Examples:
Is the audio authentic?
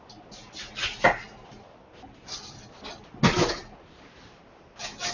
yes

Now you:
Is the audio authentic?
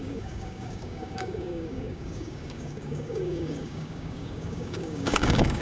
no